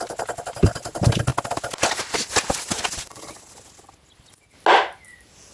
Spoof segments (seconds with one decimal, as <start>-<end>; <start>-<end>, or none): none